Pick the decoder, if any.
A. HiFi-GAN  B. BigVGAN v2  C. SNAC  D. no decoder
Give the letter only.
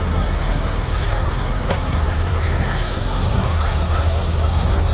C